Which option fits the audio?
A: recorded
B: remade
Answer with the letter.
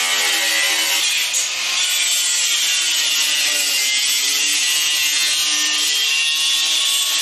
A